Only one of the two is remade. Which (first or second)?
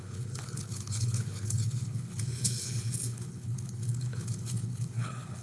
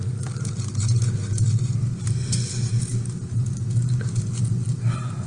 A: first